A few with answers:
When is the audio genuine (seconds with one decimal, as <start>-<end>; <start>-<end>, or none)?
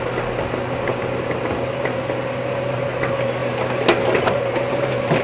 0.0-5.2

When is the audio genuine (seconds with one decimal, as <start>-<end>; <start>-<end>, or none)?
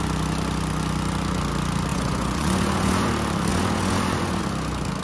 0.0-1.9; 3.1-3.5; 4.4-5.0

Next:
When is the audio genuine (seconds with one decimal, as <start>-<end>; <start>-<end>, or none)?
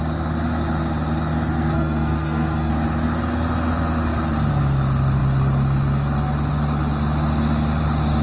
0.0-1.5; 2.7-8.2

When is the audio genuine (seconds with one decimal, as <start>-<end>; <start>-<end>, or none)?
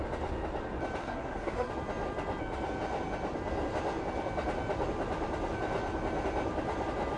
0.0-1.0; 1.7-7.2